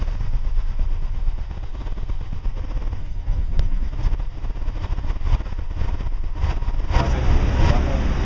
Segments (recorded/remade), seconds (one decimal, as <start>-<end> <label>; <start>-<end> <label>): 0.0-3.0 recorded; 3.0-3.9 remade; 3.9-8.2 recorded